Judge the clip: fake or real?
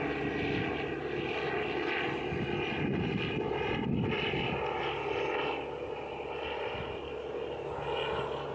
real